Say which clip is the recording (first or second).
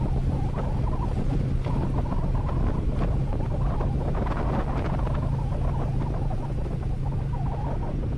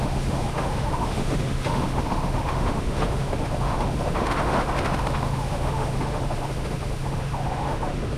first